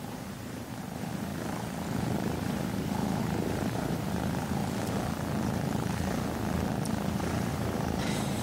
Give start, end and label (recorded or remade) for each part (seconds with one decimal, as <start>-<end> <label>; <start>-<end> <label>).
0.0-1.3 remade; 1.3-2.4 recorded; 2.4-4.6 remade; 4.6-7.2 recorded; 7.2-8.4 remade

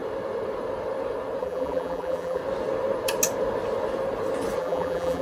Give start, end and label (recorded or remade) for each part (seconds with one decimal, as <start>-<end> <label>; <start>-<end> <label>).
0.0-1.4 recorded; 1.4-2.4 remade; 2.4-4.6 recorded; 4.6-5.2 remade